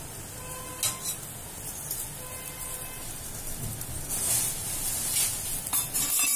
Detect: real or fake real